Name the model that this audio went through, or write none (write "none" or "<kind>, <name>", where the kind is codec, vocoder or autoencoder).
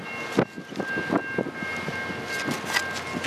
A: none